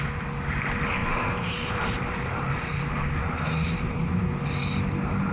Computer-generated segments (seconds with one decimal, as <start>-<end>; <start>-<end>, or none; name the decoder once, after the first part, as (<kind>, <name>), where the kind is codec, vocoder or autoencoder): 1.0-4.2 (vocoder, BigVGAN v2)